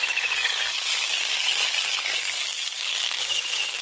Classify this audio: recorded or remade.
remade